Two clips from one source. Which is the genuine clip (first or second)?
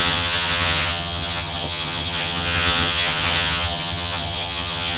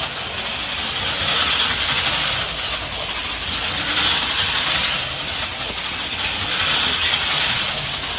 second